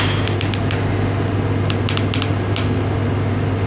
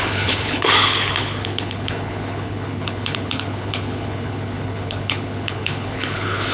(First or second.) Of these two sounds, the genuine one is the first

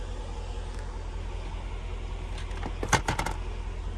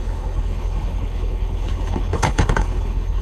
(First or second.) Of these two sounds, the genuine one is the first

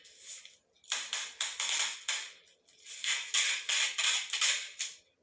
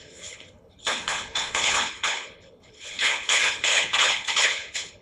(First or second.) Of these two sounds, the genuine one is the first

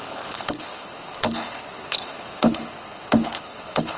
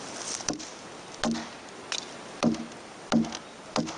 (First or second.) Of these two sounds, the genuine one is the second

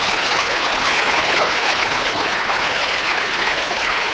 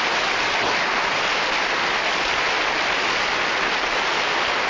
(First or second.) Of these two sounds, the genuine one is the second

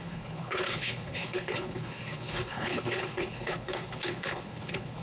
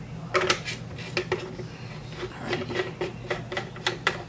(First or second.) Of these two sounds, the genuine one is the second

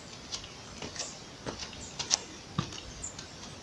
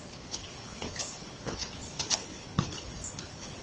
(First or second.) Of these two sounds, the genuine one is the first